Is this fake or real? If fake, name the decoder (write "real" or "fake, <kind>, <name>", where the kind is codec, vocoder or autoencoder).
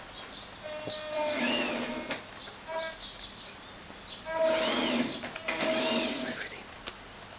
real